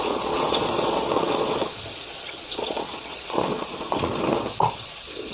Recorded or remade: remade